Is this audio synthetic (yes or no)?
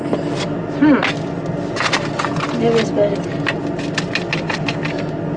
no